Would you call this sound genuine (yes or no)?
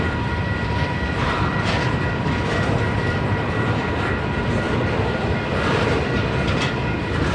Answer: no